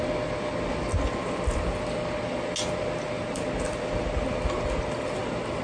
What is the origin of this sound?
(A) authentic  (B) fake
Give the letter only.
A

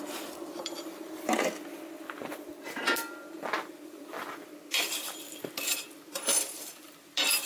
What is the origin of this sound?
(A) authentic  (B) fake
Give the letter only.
B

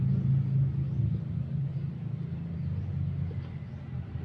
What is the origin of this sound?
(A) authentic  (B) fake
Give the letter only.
A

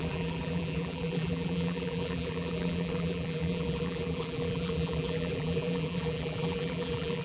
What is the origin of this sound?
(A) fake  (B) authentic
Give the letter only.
A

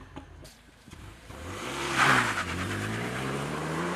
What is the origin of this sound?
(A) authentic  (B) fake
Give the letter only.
B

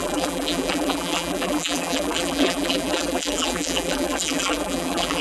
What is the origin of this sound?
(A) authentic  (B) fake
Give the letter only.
B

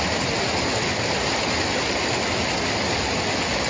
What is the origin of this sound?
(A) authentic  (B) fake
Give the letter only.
A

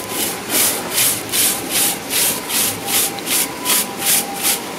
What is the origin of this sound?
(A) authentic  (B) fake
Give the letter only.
A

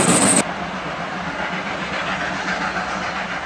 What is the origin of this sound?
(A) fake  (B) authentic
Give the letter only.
B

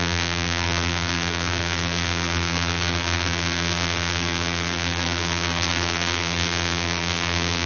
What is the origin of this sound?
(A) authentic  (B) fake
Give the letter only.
B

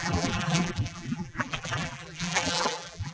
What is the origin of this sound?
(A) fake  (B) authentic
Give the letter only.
A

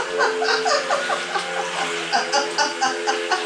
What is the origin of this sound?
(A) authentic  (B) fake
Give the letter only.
A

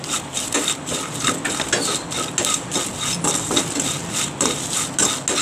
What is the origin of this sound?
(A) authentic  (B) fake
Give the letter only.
A